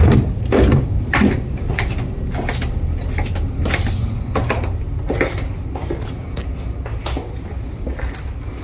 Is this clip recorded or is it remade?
recorded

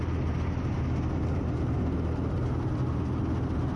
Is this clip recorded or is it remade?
recorded